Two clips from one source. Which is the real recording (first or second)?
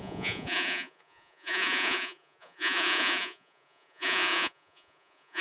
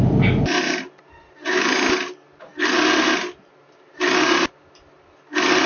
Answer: second